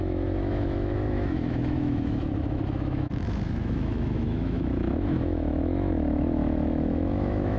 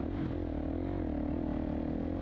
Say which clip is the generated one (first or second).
first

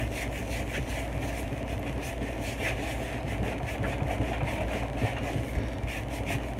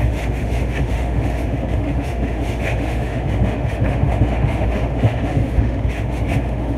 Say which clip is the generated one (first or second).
second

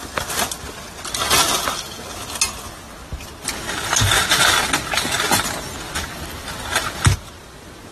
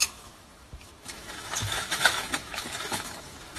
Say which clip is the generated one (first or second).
second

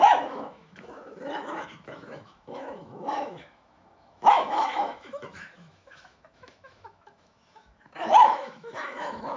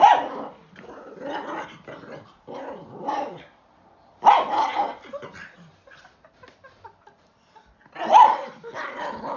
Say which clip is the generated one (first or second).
first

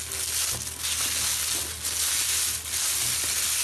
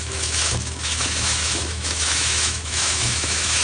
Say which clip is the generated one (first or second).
second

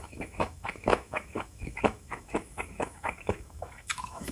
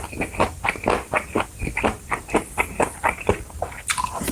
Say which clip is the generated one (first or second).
first